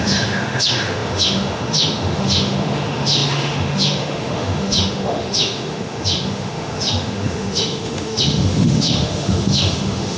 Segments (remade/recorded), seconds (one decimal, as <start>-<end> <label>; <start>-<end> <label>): 0.0-10.2 remade